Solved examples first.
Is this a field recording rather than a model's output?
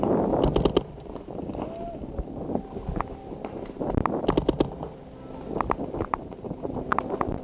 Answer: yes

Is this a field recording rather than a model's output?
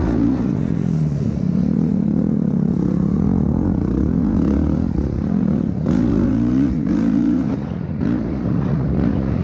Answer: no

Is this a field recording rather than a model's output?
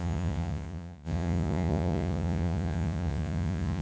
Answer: no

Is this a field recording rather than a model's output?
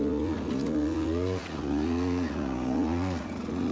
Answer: no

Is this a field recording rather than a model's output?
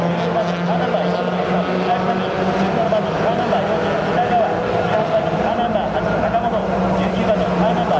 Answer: yes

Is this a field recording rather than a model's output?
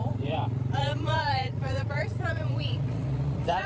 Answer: no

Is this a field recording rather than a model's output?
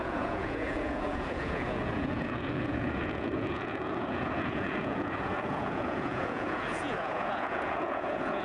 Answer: no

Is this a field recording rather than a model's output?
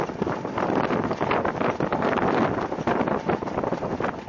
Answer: yes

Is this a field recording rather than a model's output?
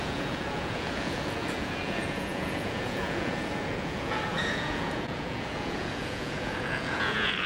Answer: no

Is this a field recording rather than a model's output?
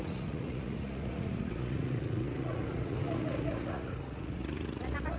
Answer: no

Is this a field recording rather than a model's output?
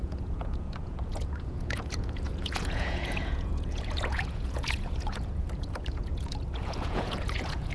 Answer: no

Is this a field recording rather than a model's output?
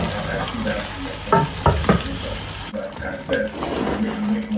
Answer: yes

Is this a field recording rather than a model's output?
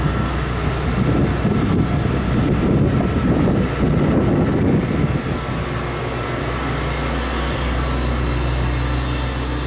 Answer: yes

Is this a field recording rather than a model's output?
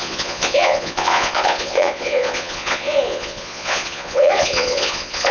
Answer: no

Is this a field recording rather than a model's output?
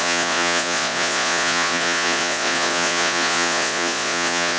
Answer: no